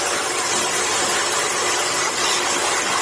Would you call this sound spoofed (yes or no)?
no